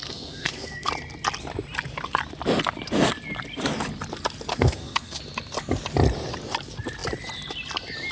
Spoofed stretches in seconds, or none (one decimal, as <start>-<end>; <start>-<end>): 0.0-0.9; 4.5-5.2

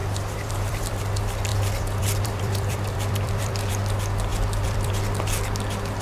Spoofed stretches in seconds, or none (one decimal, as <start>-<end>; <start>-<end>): 0.0-1.0; 1.5-3.7; 4.3-4.9

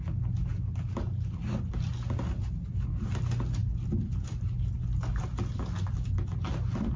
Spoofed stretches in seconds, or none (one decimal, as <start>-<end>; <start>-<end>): none

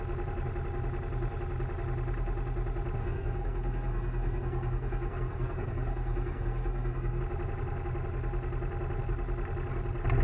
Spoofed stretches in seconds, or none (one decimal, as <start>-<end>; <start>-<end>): 3.0-7.2

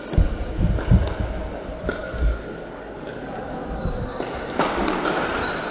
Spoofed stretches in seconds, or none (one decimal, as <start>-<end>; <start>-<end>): 2.0-3.9

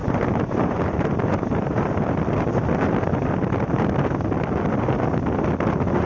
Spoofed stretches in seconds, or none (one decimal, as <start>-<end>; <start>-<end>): 0.0-1.9